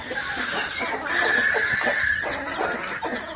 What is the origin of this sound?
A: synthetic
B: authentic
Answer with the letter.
B